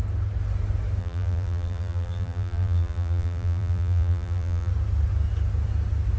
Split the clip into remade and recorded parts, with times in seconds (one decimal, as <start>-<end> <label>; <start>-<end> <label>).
0.0-1.0 recorded; 1.0-4.7 remade; 4.7-6.2 recorded